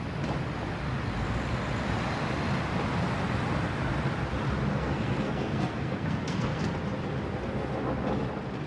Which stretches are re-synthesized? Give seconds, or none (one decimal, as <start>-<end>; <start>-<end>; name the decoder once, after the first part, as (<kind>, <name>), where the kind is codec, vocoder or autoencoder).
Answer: 4.7-6.7 (codec, SNAC)